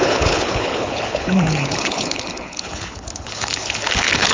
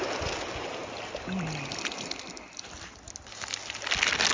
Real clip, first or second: second